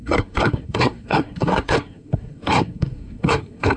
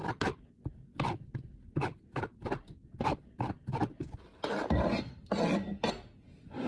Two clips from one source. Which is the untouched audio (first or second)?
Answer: second